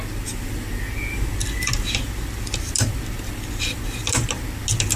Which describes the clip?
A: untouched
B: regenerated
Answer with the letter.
A